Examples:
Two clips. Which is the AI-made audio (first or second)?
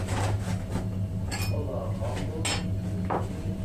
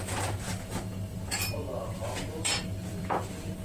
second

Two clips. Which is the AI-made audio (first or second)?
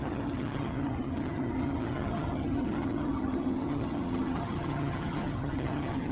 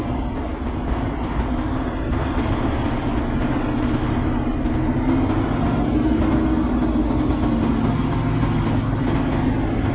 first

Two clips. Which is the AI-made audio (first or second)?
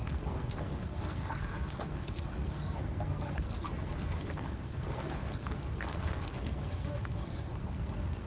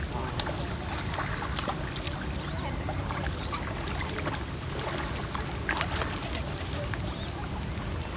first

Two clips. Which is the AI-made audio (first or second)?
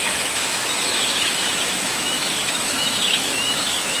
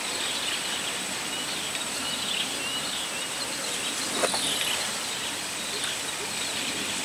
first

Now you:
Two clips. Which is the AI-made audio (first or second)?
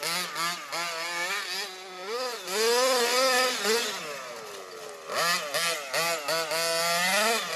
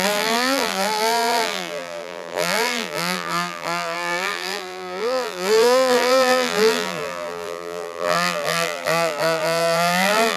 second